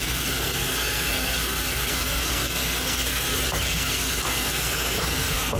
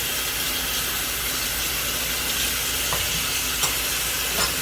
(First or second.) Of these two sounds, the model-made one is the first